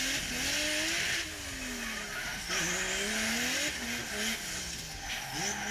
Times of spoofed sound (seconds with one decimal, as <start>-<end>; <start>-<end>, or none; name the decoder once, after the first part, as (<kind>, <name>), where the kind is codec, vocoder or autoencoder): none